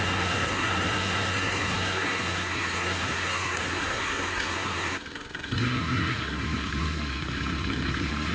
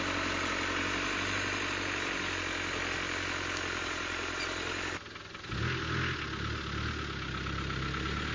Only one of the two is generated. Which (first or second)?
first